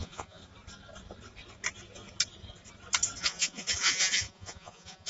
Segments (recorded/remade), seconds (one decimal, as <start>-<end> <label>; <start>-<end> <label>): 0.0-0.4 remade; 0.4-3.2 recorded; 3.2-5.1 remade